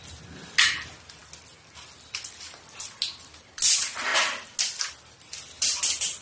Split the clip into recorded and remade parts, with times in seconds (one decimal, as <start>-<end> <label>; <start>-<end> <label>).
0.0-6.2 recorded